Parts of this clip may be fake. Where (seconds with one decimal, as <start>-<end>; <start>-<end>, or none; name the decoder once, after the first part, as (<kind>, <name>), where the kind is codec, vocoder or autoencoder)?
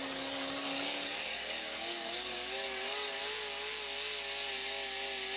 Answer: 0.0-3.2 (codec, DAC)